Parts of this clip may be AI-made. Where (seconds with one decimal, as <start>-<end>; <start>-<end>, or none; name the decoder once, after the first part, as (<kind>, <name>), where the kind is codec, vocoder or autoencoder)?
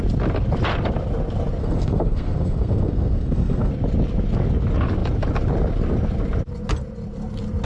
1.6-3.7 (codec, SNAC)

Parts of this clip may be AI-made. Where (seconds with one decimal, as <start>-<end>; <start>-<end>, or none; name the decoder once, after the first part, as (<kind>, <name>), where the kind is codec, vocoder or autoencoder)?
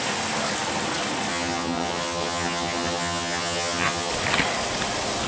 1.3-4.1 (vocoder, HiFi-GAN)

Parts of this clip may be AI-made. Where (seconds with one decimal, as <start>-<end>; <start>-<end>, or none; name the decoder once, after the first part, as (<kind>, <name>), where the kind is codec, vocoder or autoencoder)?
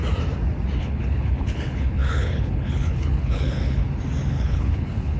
0.8-3.8 (codec, HILCodec); 4.3-5.2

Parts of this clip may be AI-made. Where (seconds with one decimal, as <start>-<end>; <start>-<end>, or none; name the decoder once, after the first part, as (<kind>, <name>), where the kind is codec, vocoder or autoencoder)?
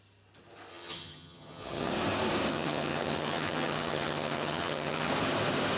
0.7-1.9 (vocoder, HiFi-GAN); 2.5-5.1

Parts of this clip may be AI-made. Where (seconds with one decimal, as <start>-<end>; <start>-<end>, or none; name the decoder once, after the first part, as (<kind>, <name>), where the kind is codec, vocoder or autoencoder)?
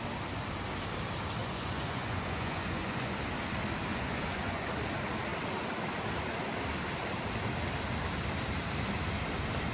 1.4-3.2 (vocoder, Vocos); 3.9-4.7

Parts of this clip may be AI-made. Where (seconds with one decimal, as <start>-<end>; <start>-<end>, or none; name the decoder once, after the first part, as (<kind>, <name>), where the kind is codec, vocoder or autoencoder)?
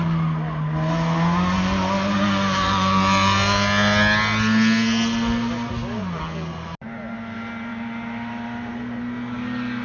none